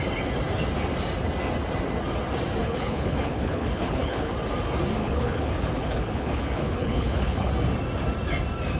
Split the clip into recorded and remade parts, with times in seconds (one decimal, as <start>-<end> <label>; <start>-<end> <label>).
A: 0.0-2.6 recorded; 2.6-4.3 remade; 4.3-5.0 recorded; 5.0-7.5 remade; 7.5-8.8 recorded